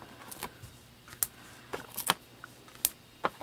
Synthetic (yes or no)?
no